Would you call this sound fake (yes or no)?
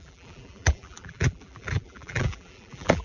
yes